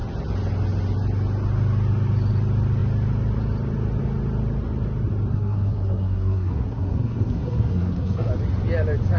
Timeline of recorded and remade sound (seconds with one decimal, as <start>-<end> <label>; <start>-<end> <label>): 0.0-5.3 recorded; 5.3-8.3 remade; 8.3-9.2 recorded